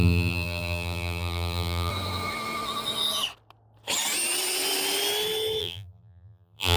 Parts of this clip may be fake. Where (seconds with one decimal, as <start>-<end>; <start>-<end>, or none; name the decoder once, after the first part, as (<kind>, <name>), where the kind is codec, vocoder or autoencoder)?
0.0-1.9 (vocoder, BigVGAN v2); 5.6-6.8